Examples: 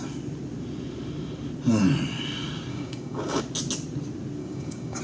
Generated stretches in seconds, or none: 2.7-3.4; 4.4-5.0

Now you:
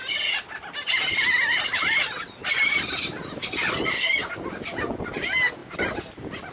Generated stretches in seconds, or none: none

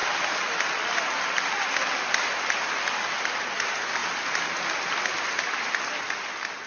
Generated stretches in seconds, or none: none

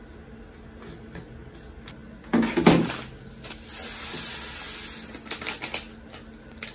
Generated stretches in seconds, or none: none